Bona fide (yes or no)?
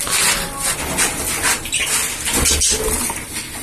yes